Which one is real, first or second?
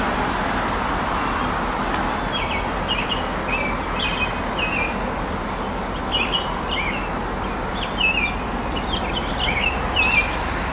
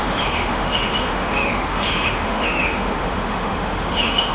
first